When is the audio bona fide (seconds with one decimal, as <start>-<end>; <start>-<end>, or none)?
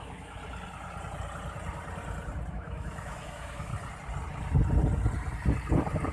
0.4-2.5; 3.7-6.1